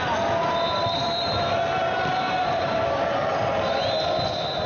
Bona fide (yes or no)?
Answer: yes